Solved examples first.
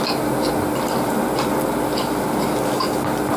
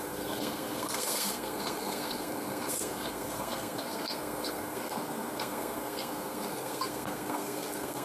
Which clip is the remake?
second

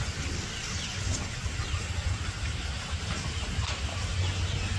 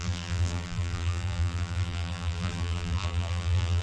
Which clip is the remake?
second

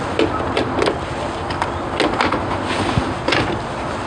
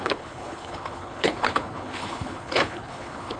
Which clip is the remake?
second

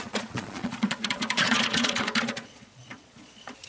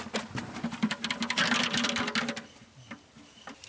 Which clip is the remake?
first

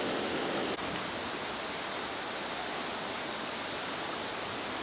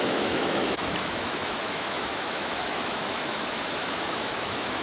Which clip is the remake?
second